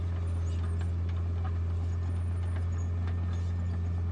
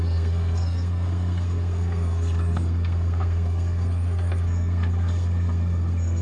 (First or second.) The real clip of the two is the first